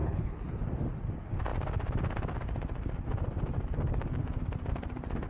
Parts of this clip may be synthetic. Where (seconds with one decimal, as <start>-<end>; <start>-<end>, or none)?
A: 0.0-0.5